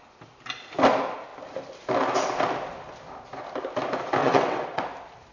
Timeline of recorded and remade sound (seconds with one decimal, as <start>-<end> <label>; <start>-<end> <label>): 0.0-4.2 recorded; 4.2-4.8 remade; 4.8-5.3 recorded